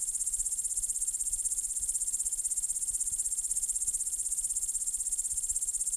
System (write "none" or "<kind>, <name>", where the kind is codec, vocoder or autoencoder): none